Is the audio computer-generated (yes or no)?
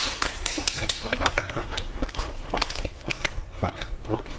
yes